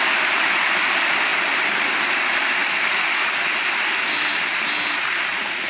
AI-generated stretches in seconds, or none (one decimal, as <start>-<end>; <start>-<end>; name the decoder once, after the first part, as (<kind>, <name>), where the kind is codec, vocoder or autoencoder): 0.0-2.6 (vocoder, BigVGAN v2); 4.9-5.7